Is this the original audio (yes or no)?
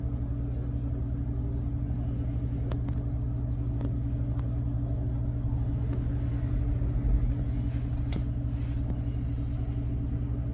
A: yes